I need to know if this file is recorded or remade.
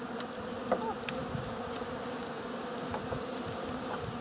recorded